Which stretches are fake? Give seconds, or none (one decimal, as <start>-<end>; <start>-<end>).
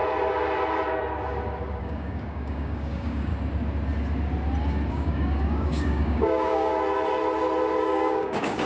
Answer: 1.8-3.3; 4.9-6.7; 7.8-8.7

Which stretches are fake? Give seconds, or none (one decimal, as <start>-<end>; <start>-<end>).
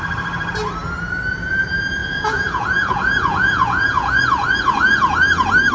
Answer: 2.0-5.7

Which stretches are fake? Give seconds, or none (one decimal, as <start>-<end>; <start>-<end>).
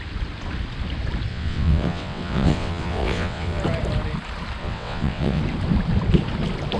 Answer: 1.3-3.6; 4.6-5.4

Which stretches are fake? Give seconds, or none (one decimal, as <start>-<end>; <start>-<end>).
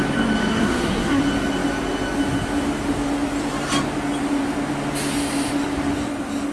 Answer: 0.5-1.2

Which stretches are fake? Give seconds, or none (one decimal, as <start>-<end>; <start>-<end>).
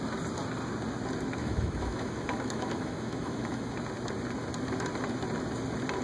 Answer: 1.4-3.7